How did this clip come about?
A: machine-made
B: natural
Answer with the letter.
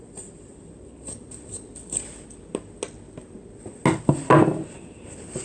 B